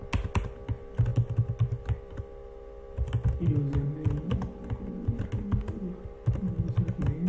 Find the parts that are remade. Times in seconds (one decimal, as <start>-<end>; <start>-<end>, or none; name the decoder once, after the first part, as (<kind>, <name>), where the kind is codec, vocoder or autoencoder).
none